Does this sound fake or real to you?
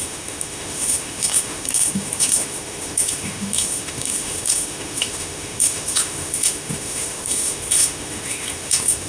fake